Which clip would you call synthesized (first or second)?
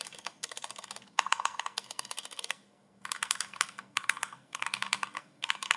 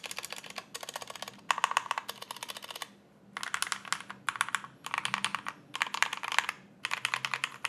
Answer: first